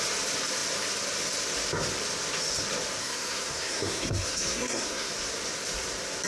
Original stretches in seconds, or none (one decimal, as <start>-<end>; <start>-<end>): 0.0-3.0; 5.1-6.3